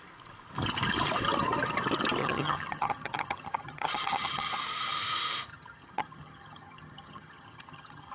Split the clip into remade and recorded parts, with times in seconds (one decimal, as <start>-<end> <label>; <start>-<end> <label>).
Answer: 0.0-2.2 recorded; 2.2-4.5 remade; 4.5-5.5 recorded; 5.5-8.1 remade